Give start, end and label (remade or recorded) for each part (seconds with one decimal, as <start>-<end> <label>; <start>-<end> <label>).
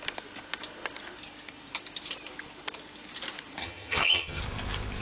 0.0-3.6 recorded; 3.6-4.4 remade; 4.4-5.0 recorded